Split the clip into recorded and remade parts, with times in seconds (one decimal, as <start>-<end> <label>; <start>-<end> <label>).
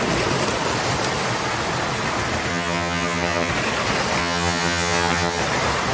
0.0-2.5 recorded; 2.5-3.5 remade; 3.5-4.2 recorded; 4.2-5.4 remade; 5.4-5.9 recorded